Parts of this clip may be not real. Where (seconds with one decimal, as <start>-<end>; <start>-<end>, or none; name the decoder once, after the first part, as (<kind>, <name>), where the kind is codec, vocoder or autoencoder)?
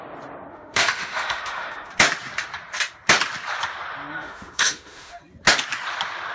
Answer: 0.5-1.9 (autoencoder, DAC-VAE); 4.1-5.2